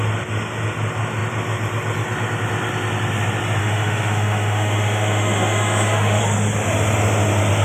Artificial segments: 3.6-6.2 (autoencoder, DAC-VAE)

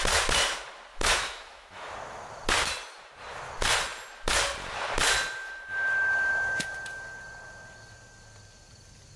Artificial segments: 0.9-1.9 (autoencoder, DAC-VAE)

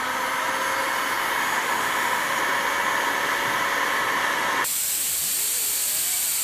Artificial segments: 1.4-2.4 (autoencoder, DAC-VAE)

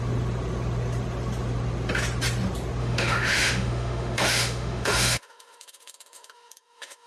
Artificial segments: 2.8-7.1 (autoencoder, DAC-VAE)

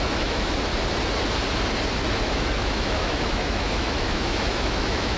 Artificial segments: 0.0-0.7 (autoencoder, DAC-VAE); 2.2-5.2

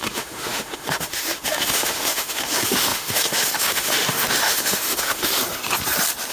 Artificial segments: 0.0-5.4 (autoencoder, DAC-VAE)

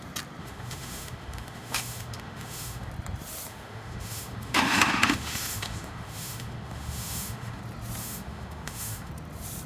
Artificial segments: 0.4-2.9 (autoencoder, DAC-VAE); 3.5-7.6; 8.0-9.1